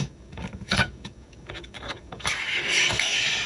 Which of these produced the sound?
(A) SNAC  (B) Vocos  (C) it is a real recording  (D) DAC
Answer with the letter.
D